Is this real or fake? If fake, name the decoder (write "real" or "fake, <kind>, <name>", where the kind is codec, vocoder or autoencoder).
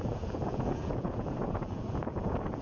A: fake, vocoder, Vocos